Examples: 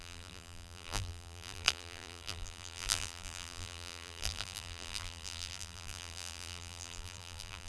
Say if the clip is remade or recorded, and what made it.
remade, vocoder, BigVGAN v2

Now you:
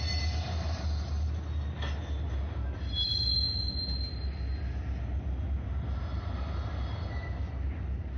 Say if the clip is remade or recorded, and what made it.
recorded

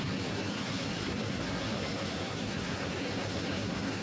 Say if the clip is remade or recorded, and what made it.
remade, codec, SNAC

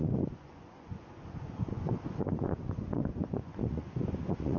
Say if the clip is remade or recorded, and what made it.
remade, vocoder, Vocos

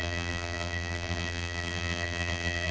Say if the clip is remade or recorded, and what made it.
remade, vocoder, BigVGAN v2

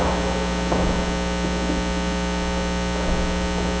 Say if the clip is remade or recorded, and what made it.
recorded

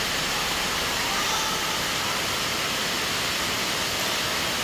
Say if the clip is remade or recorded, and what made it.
recorded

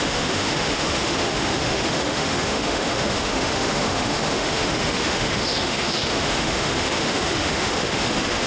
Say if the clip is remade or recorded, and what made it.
remade, autoencoder, DAC-VAE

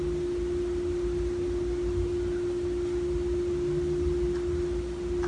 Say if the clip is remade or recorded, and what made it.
recorded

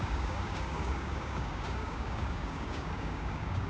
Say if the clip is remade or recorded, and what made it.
remade, codec, DAC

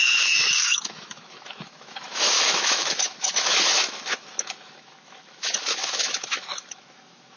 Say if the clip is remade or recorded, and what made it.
remade, autoencoder, DAC-VAE